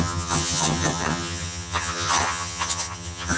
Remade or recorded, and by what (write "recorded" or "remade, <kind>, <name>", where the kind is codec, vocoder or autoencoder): remade, vocoder, HiFi-GAN